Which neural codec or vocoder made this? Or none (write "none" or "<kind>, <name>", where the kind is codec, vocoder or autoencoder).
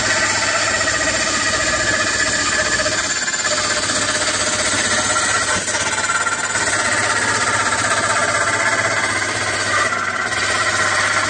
none